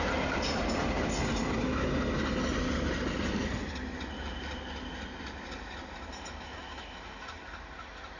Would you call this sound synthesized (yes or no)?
no